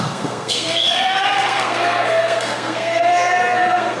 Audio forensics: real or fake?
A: fake